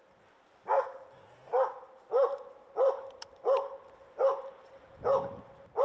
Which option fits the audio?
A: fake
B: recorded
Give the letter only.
B